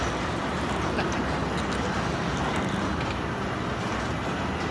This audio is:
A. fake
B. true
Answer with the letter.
B